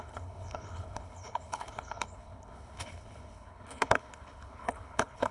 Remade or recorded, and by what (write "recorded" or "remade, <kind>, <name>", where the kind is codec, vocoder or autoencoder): remade, codec, HILCodec